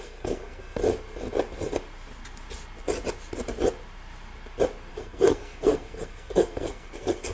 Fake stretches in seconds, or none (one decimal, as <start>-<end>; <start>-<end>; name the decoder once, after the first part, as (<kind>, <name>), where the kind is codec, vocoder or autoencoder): 0.0-0.8 (codec, SNAC); 4.9-7.3